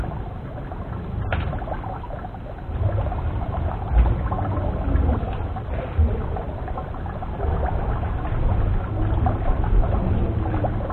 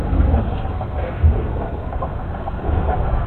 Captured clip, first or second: first